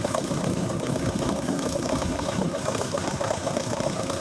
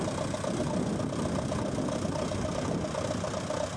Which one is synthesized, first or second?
first